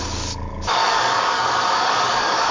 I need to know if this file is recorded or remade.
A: remade